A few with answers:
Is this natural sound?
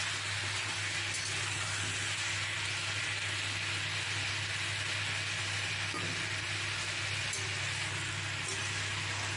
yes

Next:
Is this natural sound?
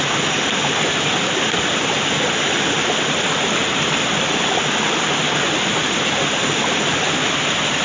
yes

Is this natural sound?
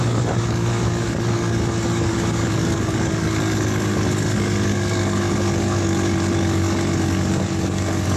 no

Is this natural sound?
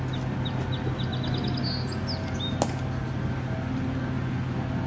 yes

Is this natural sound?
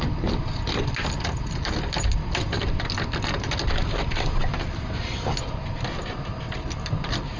yes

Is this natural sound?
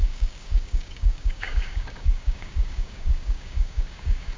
no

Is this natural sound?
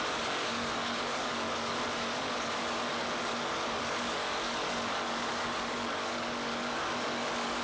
no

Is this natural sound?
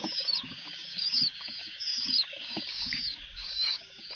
no